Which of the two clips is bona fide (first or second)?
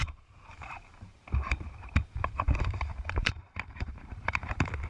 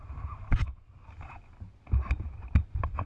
second